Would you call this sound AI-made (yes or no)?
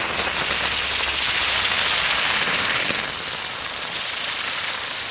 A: no